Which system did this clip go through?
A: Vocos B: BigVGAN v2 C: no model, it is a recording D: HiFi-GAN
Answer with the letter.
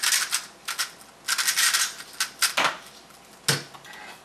C